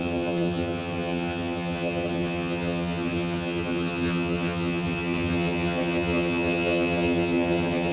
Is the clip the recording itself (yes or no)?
no